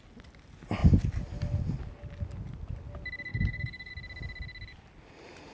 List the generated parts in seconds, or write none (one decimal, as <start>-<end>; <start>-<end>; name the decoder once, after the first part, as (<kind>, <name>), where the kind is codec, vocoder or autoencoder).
3.3-3.9 (codec, DAC)

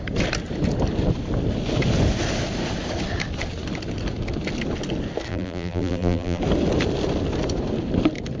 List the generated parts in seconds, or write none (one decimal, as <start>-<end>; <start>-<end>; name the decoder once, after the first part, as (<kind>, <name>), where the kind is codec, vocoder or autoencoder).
5.3-6.4 (vocoder, BigVGAN v2)

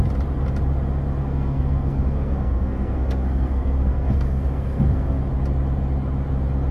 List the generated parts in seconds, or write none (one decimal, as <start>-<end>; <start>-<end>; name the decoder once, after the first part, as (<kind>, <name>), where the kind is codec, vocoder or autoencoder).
1.2-5.2 (codec, SNAC)

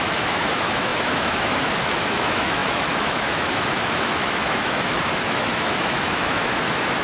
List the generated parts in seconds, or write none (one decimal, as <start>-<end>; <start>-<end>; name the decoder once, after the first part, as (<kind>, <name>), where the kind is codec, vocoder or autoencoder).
0.0-7.0 (autoencoder, DAC-VAE)

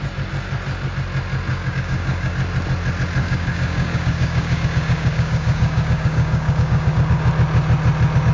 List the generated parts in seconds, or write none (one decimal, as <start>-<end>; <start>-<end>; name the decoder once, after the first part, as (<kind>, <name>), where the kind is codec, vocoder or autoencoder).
1.5-2.3 (codec, DAC); 3.2-7.3

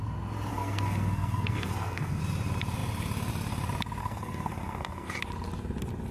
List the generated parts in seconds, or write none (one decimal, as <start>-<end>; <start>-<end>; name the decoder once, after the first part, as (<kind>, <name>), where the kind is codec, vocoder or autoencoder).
0.5-2.2 (codec, SNAC); 4.0-5.2